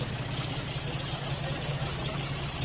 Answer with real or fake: real